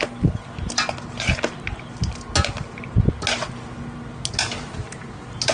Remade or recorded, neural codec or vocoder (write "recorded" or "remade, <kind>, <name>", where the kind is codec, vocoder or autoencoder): recorded